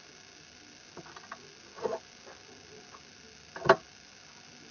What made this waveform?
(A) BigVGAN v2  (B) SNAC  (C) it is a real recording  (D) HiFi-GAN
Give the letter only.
C